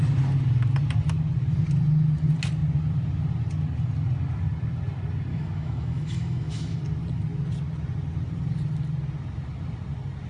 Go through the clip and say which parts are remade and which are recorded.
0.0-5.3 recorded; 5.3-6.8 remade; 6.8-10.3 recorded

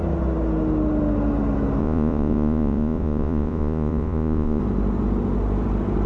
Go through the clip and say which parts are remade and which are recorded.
0.0-1.8 recorded; 1.8-4.6 remade; 4.6-6.1 recorded

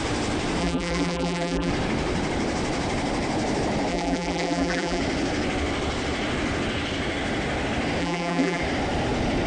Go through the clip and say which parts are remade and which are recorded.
0.0-0.6 recorded; 0.6-1.7 remade; 1.7-3.9 recorded; 3.9-5.0 remade; 5.0-8.0 recorded; 8.0-8.6 remade; 8.6-9.5 recorded

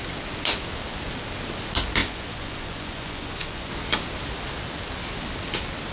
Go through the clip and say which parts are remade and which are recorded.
0.0-2.0 recorded; 2.0-3.7 remade; 3.7-5.9 recorded

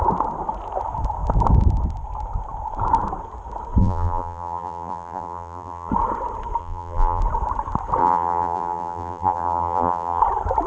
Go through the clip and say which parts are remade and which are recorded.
0.0-3.8 recorded; 3.8-5.9 remade; 5.9-6.6 recorded; 6.6-7.2 remade; 7.2-8.0 recorded; 8.0-10.2 remade; 10.2-10.7 recorded

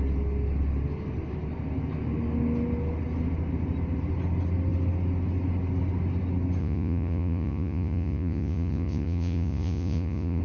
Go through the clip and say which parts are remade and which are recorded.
0.0-6.6 recorded; 6.6-10.4 remade

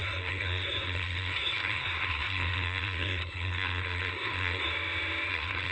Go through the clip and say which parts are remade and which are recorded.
0.0-4.7 remade; 4.7-5.3 recorded; 5.3-5.7 remade